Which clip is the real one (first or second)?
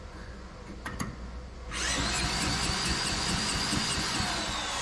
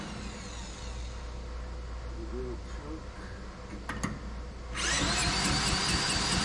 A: second